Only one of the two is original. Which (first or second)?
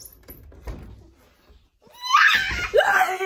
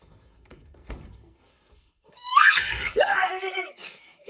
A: first